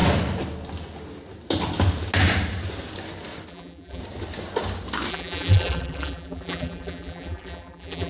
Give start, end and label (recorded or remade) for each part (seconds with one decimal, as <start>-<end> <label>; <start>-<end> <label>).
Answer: 0.0-3.5 recorded; 3.5-4.0 remade; 4.0-5.1 recorded; 5.1-8.1 remade